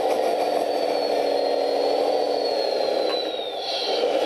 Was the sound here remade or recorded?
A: recorded